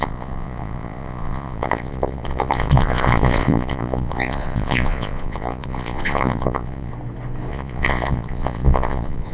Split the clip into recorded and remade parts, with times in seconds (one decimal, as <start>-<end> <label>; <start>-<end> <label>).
0.0-6.9 remade; 6.9-7.5 recorded; 7.5-9.3 remade